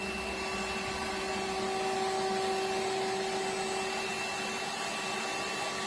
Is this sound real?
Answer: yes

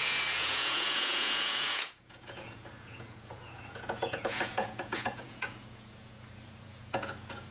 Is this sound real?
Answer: no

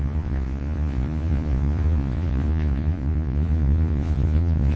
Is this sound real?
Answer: no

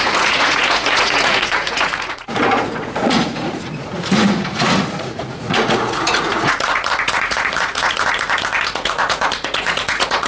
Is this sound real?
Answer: no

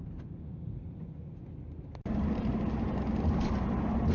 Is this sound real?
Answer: yes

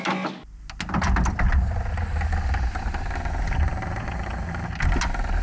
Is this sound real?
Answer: yes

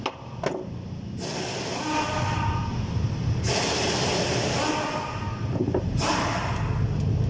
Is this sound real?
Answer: yes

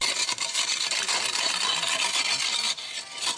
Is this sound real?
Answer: yes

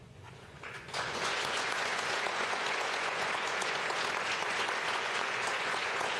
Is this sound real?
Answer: no